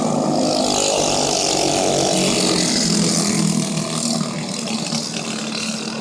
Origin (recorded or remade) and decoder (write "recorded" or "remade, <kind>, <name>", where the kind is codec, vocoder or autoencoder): recorded